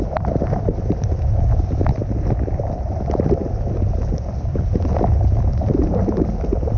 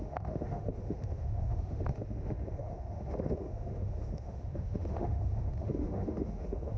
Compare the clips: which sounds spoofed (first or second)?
second